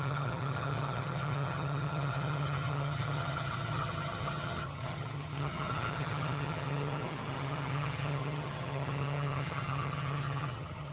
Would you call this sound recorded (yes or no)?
no